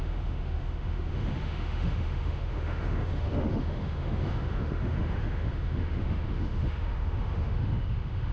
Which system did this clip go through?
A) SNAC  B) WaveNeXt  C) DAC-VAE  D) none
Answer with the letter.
C